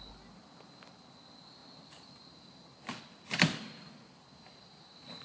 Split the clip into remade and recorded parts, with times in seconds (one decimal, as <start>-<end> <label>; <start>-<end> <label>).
0.0-5.2 recorded